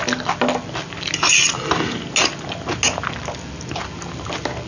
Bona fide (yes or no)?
yes